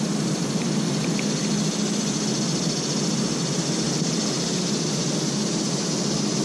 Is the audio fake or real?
real